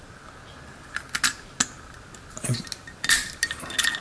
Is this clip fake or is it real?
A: real